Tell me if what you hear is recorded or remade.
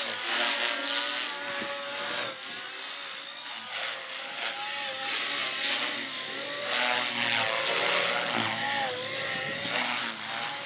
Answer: recorded